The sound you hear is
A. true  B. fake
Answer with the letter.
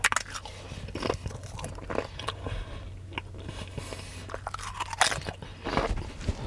A